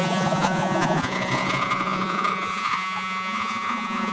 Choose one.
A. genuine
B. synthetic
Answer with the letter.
B